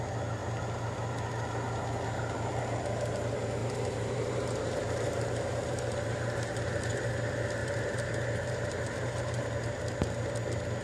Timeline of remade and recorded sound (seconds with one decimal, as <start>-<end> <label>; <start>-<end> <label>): 0.0-3.6 recorded; 3.6-6.7 remade; 6.7-7.6 recorded; 7.6-9.4 remade; 9.4-10.8 recorded